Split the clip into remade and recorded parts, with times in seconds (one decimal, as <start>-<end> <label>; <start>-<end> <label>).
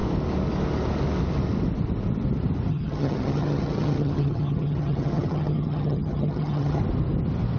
0.0-2.7 recorded; 2.7-6.8 remade; 6.8-7.6 recorded